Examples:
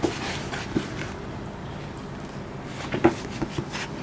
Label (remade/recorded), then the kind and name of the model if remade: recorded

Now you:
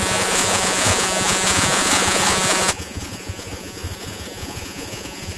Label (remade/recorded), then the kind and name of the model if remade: remade, vocoder, Vocos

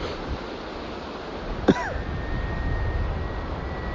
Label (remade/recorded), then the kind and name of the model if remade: recorded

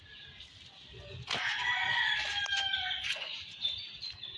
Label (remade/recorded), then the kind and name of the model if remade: recorded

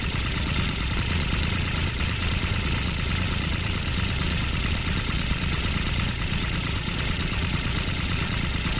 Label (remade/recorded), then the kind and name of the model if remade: remade, vocoder, Vocos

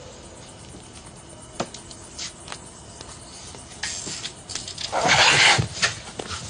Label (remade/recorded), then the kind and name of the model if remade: recorded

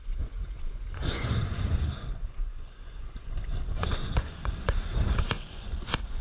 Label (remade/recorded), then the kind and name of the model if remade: remade, vocoder, Vocos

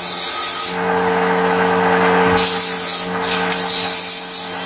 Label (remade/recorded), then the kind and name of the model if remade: recorded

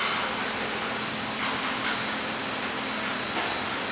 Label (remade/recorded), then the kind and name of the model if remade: recorded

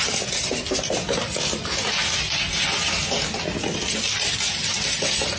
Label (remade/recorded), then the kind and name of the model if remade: recorded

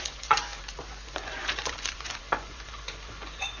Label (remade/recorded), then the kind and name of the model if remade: remade, vocoder, Vocos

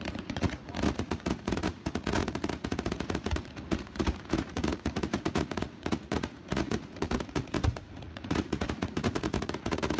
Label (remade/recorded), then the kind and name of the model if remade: remade, vocoder, Vocos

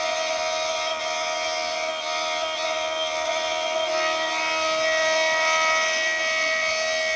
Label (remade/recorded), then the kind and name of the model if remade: recorded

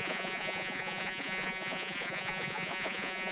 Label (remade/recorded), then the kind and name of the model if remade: remade, vocoder, Vocos